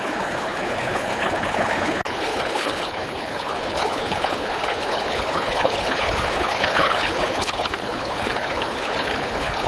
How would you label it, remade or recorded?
remade